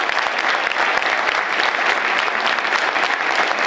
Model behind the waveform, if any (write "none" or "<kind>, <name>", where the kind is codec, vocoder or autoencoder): none